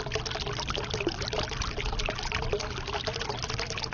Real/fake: real